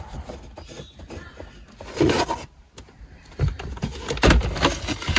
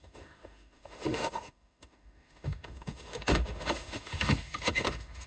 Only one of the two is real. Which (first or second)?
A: first